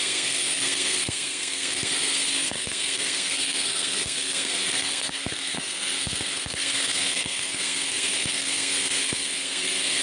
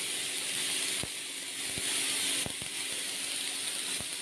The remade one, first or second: first